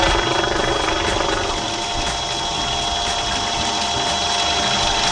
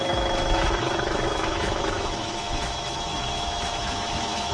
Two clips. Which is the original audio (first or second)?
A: first